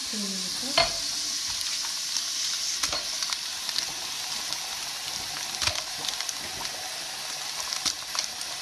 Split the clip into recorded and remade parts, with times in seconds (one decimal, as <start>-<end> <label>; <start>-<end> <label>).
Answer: 0.0-8.6 recorded